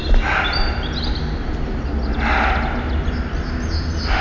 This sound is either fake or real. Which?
real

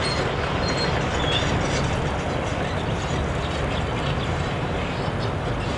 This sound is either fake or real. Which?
real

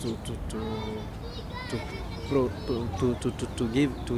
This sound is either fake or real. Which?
real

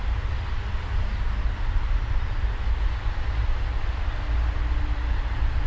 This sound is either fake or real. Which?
real